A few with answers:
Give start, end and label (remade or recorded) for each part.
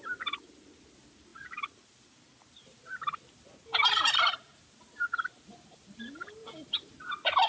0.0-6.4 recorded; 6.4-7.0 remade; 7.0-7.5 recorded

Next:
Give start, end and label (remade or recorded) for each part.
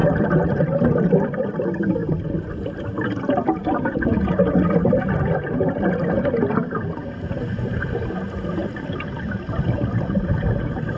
0.0-1.2 remade; 1.2-2.0 recorded; 2.0-4.3 remade; 4.3-7.0 recorded; 7.0-8.0 remade; 8.0-8.6 recorded; 8.6-9.4 remade; 9.4-11.0 recorded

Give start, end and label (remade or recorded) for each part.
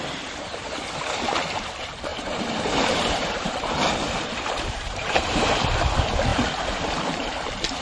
0.0-2.1 recorded; 2.1-5.7 remade; 5.7-6.3 recorded; 6.3-7.3 remade; 7.3-7.8 recorded